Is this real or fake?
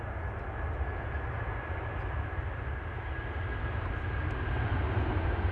real